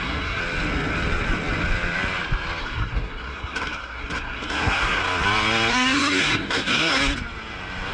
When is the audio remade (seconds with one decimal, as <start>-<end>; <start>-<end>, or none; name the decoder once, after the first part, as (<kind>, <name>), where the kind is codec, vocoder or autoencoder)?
0.0-0.4 (codec, SNAC); 2.6-5.0; 5.7-7.0